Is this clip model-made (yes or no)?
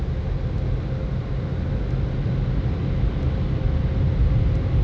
no